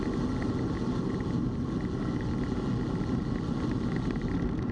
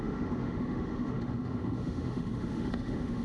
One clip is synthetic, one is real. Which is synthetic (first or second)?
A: second